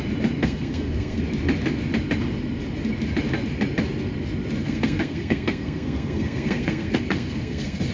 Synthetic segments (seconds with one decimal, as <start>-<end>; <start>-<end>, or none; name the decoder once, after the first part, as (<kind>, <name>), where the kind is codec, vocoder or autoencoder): 0.4-1.2 (codec, SNAC); 4.6-7.9